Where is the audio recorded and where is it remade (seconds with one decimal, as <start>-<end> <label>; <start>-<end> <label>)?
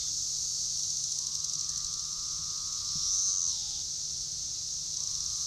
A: 0.0-5.5 recorded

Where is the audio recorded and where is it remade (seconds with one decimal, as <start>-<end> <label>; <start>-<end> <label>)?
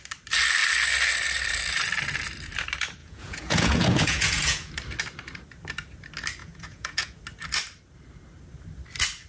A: 0.0-3.0 recorded; 3.0-4.7 remade; 4.7-6.4 recorded; 6.4-7.2 remade; 7.2-9.3 recorded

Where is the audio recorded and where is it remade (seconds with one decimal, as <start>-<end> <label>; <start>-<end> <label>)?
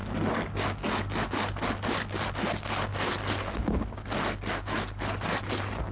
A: 0.0-5.9 recorded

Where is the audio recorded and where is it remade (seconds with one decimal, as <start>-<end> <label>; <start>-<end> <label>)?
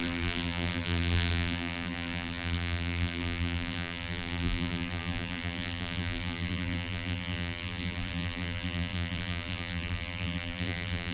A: 0.0-11.1 remade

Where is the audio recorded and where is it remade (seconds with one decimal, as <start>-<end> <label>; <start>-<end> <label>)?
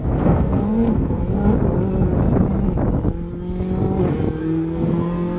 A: 0.0-1.2 remade; 1.2-4.4 recorded; 4.4-5.4 remade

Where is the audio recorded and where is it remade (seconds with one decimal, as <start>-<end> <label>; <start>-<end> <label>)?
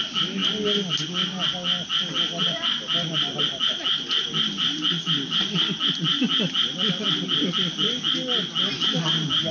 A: 0.0-9.5 recorded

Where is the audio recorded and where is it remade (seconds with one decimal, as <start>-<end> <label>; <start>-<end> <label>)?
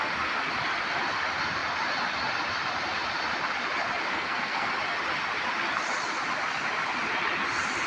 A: 0.0-4.1 recorded; 4.1-4.7 remade; 4.7-7.9 recorded